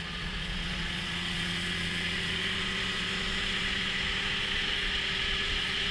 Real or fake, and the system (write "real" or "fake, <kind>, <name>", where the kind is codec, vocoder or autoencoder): fake, vocoder, Vocos